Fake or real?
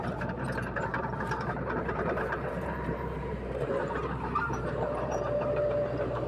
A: fake